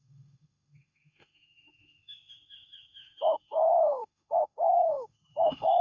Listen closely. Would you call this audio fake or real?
fake